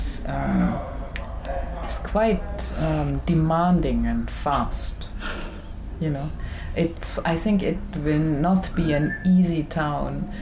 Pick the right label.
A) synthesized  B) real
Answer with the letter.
B